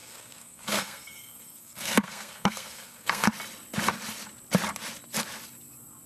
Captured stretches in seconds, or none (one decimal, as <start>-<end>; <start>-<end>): 3.3-6.1

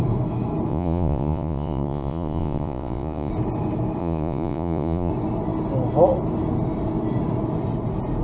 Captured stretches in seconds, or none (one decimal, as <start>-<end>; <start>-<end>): 0.0-0.7; 3.3-4.0; 5.1-8.2